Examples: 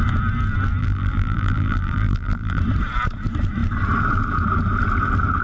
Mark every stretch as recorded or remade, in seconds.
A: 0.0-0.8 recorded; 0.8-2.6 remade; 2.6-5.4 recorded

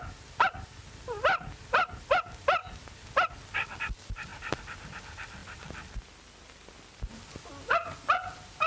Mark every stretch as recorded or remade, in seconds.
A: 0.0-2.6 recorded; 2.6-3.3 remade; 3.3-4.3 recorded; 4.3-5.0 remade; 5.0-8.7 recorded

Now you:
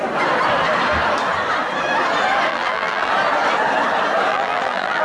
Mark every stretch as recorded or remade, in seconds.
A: 0.0-2.5 recorded; 2.5-3.1 remade; 3.1-4.3 recorded; 4.3-5.0 remade

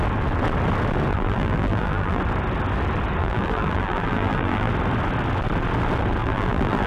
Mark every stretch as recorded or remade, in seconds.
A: 0.0-1.1 recorded; 1.1-2.2 remade; 2.2-3.2 recorded; 3.2-4.7 remade; 4.7-6.2 recorded; 6.2-6.9 remade

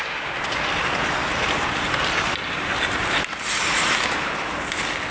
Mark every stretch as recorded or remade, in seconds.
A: 0.0-1.2 recorded; 1.2-4.3 remade; 4.3-5.1 recorded